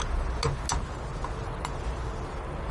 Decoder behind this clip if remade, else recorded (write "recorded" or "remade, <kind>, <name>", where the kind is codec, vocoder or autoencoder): recorded